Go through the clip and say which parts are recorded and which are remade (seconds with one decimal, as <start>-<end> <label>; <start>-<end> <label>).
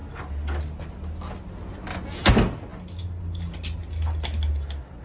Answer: 0.0-5.0 recorded